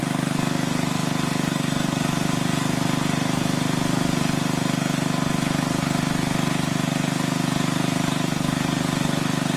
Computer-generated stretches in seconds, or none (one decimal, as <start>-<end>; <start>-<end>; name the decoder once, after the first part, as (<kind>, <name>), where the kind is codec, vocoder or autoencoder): none

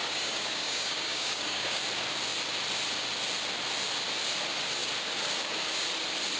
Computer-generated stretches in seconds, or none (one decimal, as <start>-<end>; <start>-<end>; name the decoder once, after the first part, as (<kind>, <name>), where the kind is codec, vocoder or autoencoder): 0.0-1.8 (codec, DAC)